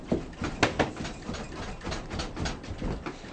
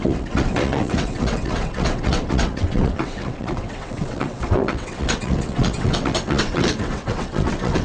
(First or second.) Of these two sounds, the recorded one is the first